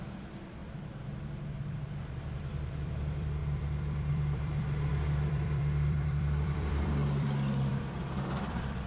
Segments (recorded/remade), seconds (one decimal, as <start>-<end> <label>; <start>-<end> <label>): 0.0-0.6 remade; 0.6-1.6 recorded; 1.6-8.9 remade